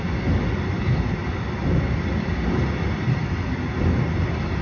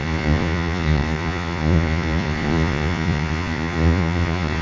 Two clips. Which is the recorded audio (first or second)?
first